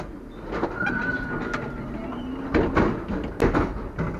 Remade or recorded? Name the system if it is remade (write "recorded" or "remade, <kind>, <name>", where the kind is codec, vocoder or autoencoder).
recorded